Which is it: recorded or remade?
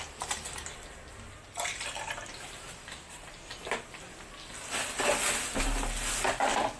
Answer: recorded